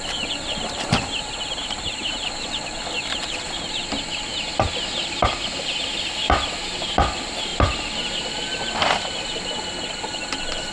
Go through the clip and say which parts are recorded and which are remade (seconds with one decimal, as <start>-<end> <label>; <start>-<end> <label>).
0.0-1.6 recorded; 1.6-2.1 remade; 2.1-10.7 recorded